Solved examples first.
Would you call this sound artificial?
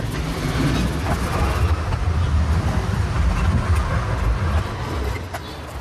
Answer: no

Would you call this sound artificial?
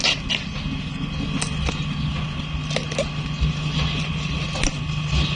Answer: no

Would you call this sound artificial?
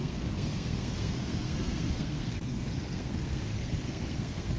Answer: yes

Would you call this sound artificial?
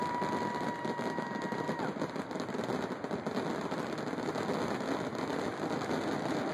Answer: no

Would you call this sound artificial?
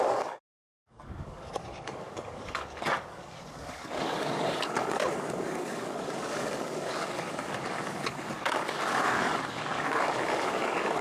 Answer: yes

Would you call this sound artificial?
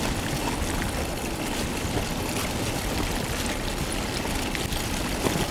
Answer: no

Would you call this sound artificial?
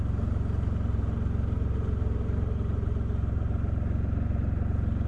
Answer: no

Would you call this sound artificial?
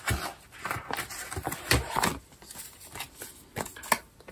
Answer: no